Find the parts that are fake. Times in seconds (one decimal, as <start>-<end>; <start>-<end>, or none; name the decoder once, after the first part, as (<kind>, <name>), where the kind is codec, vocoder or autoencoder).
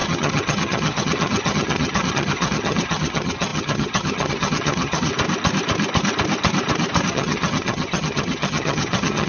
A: 0.0-5.1 (vocoder, HiFi-GAN); 7.1-9.3